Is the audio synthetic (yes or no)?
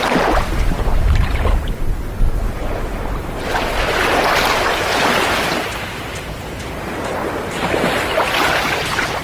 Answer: no